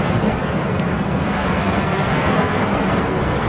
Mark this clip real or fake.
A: fake